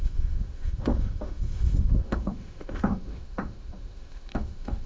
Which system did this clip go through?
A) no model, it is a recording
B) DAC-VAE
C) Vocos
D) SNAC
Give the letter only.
B